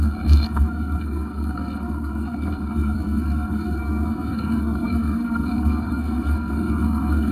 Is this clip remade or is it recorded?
remade